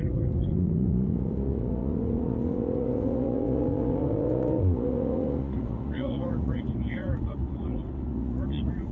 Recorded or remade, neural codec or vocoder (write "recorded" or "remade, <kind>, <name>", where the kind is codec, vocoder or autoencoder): remade, vocoder, Vocos